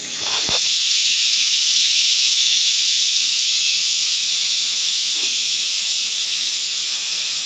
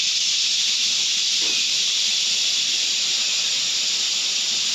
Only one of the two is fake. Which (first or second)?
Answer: first